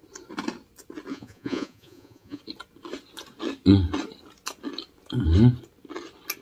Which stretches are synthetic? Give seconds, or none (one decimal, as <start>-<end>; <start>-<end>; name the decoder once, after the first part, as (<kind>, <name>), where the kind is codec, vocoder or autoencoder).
1.1-2.4 (vocoder, Vocos)